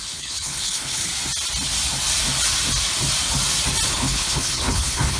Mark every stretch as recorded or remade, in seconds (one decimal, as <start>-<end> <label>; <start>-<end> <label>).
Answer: 0.0-1.1 remade; 1.1-3.9 recorded; 3.9-5.2 remade